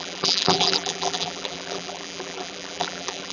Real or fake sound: fake